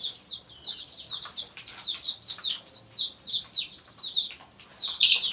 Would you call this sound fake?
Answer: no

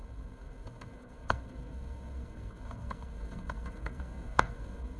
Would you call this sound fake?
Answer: yes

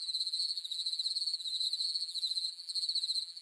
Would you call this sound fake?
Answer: yes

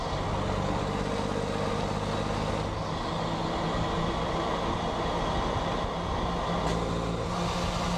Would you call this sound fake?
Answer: no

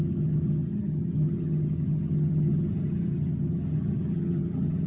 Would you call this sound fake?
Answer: yes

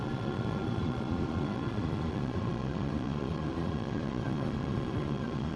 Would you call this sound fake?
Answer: yes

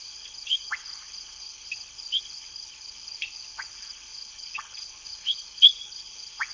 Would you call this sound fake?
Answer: yes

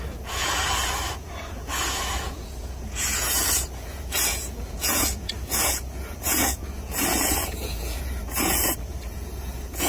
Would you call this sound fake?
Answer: yes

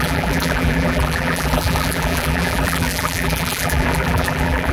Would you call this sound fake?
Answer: yes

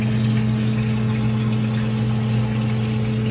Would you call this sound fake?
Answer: no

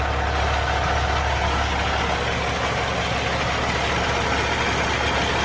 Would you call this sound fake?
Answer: no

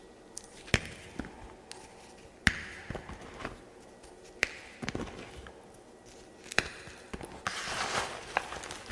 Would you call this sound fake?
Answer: no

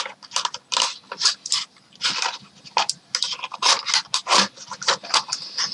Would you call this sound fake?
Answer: no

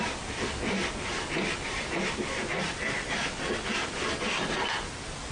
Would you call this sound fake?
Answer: no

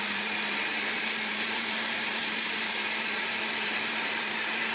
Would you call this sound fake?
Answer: yes